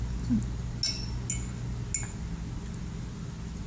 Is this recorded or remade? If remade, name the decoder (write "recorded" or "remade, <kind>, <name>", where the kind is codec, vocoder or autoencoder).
recorded